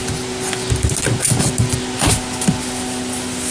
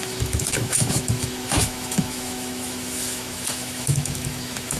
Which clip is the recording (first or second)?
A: first